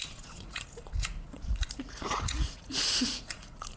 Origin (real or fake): fake